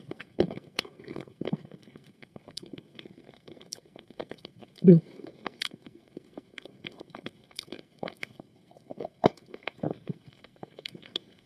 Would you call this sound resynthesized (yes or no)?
yes